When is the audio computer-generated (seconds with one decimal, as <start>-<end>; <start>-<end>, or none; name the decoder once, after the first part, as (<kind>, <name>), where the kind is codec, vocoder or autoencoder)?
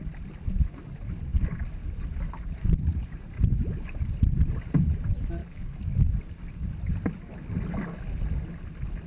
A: 5.4-6.1 (codec, DAC)